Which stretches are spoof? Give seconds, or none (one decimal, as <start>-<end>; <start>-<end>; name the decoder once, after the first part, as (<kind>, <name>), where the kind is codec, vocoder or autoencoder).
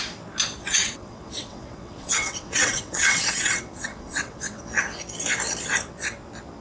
0.6-4.6 (vocoder, WaveNeXt)